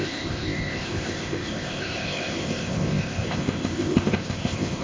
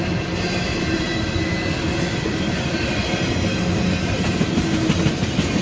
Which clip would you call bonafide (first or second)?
second